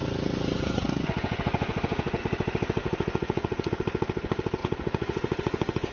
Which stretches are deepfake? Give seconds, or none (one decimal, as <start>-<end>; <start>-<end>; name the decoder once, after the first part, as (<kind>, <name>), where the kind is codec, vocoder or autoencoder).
0.0-2.2 (vocoder, Vocos); 2.8-3.7; 4.6-5.9